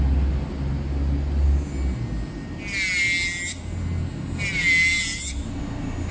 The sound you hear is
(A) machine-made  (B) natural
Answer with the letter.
B